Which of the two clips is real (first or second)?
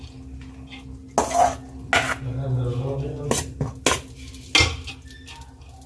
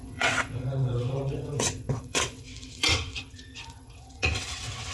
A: first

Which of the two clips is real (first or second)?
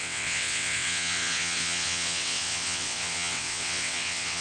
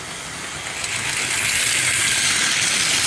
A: second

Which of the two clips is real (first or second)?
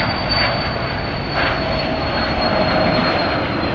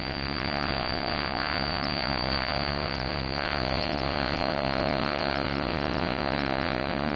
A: first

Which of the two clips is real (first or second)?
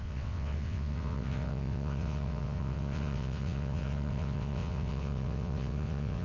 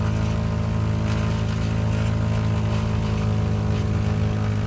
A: second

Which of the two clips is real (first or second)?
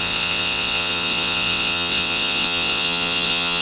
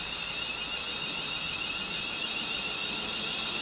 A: second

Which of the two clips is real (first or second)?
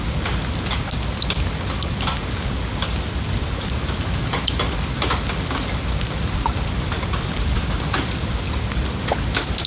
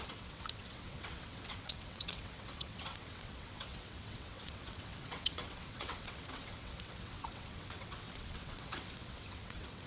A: first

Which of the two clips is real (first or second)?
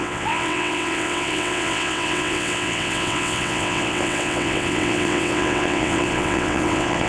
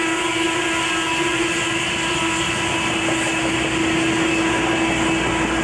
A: second